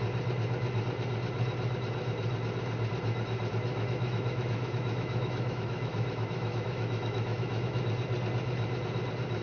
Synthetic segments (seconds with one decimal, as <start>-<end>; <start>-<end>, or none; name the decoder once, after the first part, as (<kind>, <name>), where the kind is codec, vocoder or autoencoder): 3.7-7.8 (autoencoder, DAC-VAE)